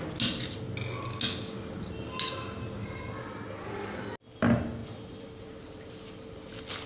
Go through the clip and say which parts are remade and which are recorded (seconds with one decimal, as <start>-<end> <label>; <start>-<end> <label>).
0.0-4.8 recorded; 4.8-6.4 remade; 6.4-6.9 recorded